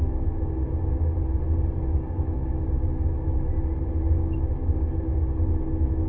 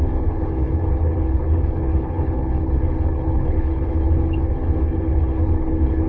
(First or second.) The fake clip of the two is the second